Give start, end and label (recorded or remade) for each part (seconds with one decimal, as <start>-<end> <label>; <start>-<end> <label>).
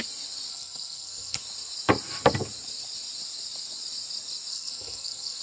0.0-0.5 recorded; 0.5-1.4 remade; 1.4-4.5 recorded; 4.5-5.4 remade